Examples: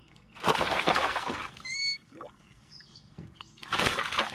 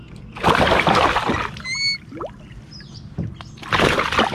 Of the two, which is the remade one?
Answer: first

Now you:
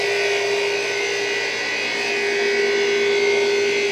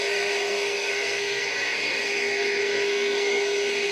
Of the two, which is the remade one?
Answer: second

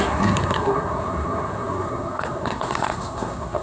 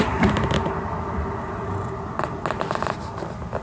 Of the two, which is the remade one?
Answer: first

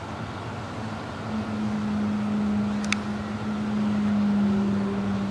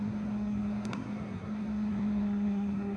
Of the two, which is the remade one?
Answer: second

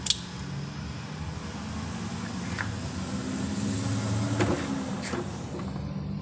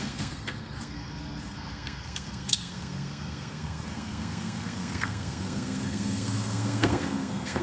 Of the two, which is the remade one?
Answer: second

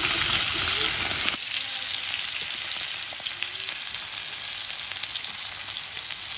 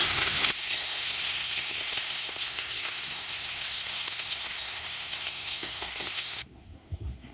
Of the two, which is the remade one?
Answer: second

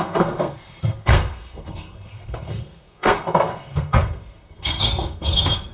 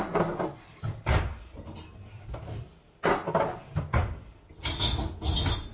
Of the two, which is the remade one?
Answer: first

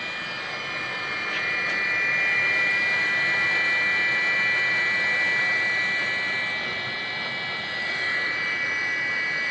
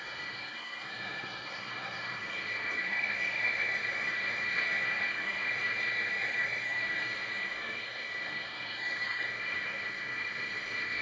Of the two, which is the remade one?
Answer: second